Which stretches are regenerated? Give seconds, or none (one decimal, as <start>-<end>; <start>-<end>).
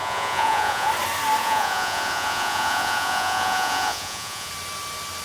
0.0-0.9; 1.4-4.5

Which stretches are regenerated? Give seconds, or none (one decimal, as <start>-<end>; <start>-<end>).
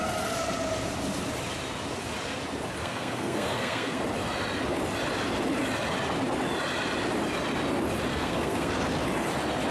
2.8-4.0; 8.1-8.7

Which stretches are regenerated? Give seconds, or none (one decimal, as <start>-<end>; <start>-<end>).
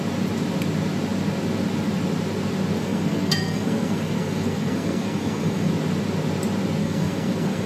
2.8-5.7; 6.8-7.7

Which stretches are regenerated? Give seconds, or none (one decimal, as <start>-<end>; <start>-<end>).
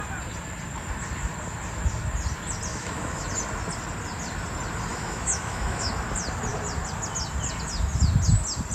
2.7-3.3; 4.9-5.9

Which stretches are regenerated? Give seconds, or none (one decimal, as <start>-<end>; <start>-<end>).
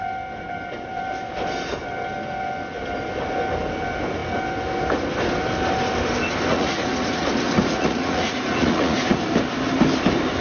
6.5-9.2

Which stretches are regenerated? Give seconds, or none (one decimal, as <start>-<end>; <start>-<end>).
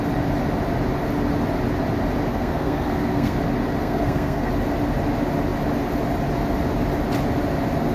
2.3-3.4; 3.8-4.5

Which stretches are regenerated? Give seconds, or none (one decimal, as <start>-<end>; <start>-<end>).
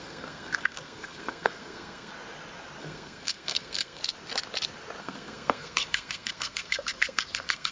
0.0-2.1; 2.8-4.0; 5.0-7.7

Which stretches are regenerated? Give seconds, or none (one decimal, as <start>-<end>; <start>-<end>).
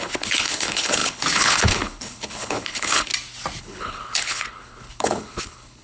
0.0-3.1; 3.6-5.8